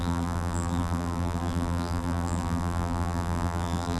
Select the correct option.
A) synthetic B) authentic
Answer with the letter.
A